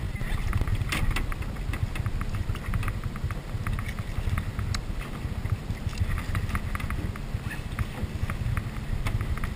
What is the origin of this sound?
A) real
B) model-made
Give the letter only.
A